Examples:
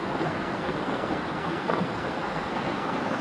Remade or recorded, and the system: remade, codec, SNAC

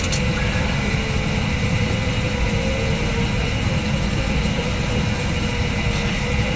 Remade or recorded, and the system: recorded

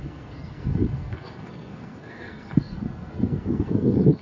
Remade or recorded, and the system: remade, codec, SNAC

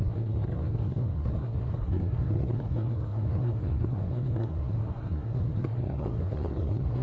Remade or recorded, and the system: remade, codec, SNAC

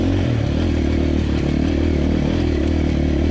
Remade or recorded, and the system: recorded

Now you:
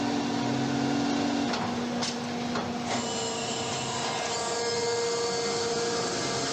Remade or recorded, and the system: recorded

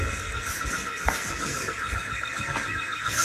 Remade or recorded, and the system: remade, codec, SNAC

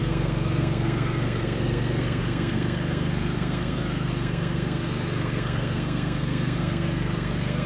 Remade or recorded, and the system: remade, codec, SNAC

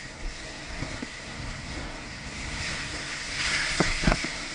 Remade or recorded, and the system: remade, codec, SNAC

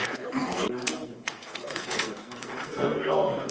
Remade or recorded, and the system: remade, codec, SNAC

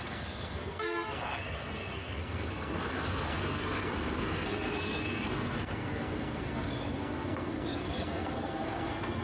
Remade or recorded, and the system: remade, codec, SNAC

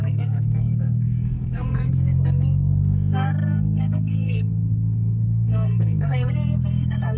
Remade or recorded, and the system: remade, codec, SNAC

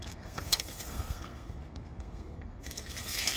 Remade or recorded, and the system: remade, codec, SNAC